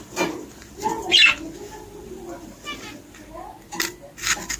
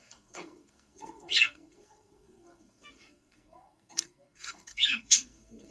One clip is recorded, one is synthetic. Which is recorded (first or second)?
first